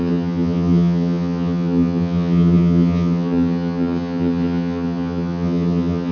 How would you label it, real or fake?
fake